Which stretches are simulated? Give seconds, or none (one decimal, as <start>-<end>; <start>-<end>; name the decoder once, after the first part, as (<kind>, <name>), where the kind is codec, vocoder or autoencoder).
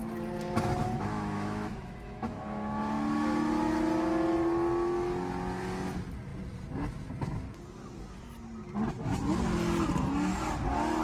0.8-2.8 (autoencoder, DAC-VAE)